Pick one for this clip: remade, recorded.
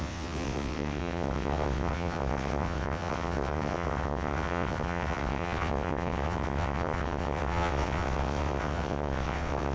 remade